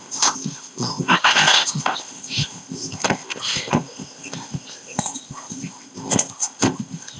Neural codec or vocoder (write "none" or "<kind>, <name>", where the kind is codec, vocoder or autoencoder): codec, ZipCodec